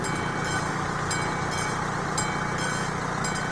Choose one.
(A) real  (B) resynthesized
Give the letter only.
A